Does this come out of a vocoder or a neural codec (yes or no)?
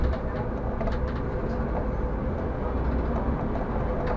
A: no